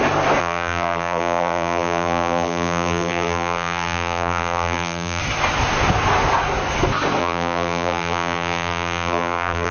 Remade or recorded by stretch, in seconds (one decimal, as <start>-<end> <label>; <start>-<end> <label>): 0.0-0.4 recorded; 0.4-5.2 remade; 5.2-7.2 recorded; 7.2-9.7 remade